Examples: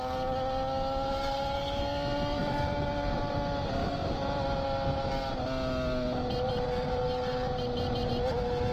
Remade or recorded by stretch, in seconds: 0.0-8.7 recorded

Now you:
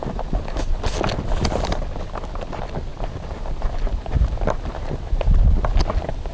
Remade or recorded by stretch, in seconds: 0.0-6.3 recorded

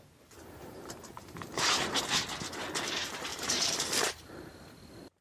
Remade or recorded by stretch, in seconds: 0.0-0.6 recorded; 0.6-2.0 remade; 2.0-3.3 recorded; 3.3-4.3 remade; 4.3-5.2 recorded

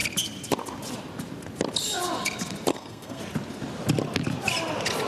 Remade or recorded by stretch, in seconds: 0.0-2.7 recorded; 2.7-3.2 remade; 3.2-5.1 recorded

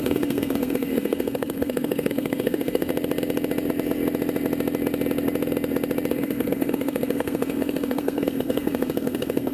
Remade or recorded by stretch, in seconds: 0.0-2.9 remade; 2.9-6.1 recorded; 6.1-9.5 remade

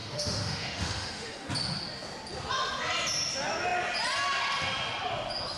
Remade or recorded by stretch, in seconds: 0.0-1.5 remade; 1.5-5.6 recorded

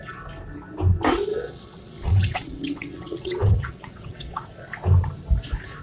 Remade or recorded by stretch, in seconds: 0.0-1.3 recorded; 1.3-4.5 remade; 4.5-5.8 recorded